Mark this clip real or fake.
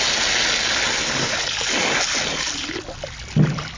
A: real